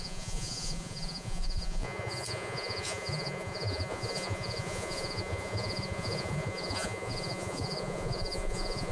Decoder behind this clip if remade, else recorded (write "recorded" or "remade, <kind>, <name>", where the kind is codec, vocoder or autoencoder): remade, vocoder, Vocos